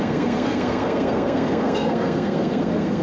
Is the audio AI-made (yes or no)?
yes